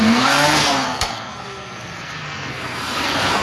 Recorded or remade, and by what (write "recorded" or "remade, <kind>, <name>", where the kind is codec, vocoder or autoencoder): remade, codec, SNAC